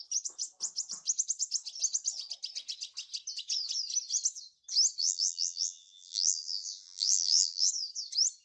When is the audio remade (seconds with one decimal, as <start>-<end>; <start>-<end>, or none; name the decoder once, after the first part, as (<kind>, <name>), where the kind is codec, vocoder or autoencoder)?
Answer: 5.0-7.7 (vocoder, BigVGAN v2)